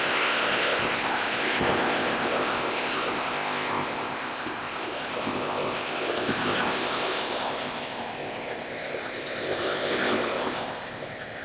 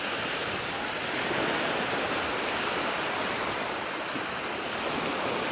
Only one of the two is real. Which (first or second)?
second